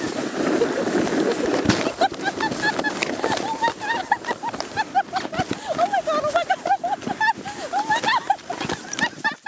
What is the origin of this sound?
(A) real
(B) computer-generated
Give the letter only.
A